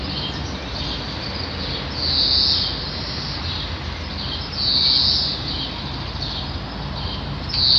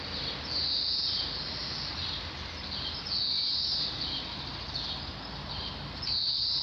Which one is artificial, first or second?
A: second